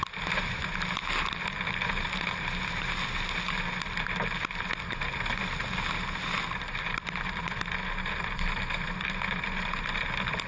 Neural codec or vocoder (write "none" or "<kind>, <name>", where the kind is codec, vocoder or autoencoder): none